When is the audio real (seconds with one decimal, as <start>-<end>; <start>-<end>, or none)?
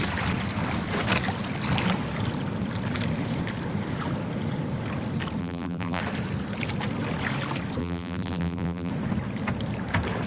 0.0-5.4; 6.0-7.8; 8.9-10.3